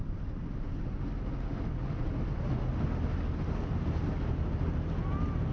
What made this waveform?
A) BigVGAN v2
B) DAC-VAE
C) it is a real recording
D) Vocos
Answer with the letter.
C